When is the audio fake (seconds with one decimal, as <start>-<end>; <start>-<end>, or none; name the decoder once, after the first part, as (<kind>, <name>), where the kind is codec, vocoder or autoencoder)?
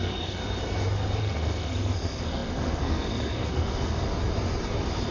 0.0-0.4 (codec, SNAC); 1.2-4.1